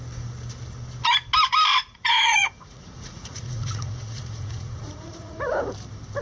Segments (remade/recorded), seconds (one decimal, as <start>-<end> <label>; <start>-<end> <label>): 0.0-1.9 recorded; 1.9-5.6 remade; 5.6-6.2 recorded